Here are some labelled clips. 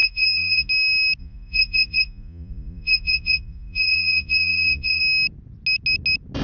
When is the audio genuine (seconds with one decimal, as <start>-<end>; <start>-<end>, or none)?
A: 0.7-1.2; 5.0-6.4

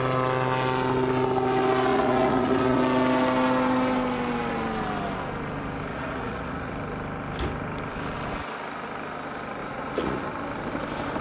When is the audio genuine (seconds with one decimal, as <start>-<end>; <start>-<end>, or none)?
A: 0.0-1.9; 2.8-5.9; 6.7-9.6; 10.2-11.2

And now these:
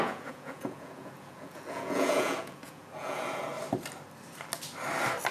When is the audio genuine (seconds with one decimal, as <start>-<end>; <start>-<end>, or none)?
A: 3.5-5.3

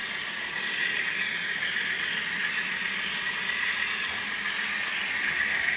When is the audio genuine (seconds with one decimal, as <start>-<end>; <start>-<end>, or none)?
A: 0.0-5.8

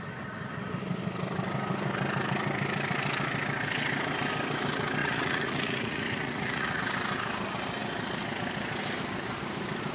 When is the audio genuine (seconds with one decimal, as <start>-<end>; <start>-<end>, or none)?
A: 0.0-5.0; 6.8-9.9

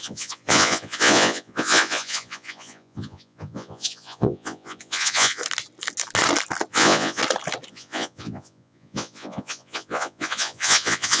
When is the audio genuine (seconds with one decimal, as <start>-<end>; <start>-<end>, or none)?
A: 5.4-6.7; 7.2-7.7